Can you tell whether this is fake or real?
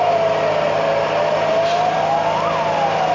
real